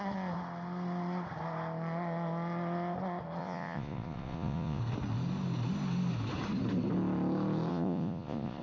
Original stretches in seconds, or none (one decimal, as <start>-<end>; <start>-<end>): 0.0-3.4; 4.8-7.7